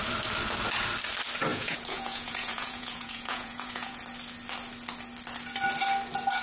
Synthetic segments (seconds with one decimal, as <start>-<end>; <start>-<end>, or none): 1.5-4.0